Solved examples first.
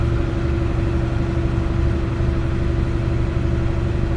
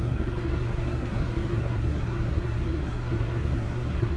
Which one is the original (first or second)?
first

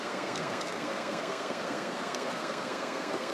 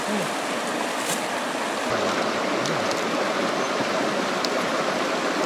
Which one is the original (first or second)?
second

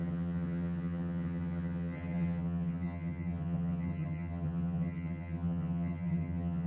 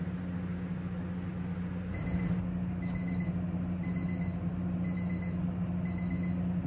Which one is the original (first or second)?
second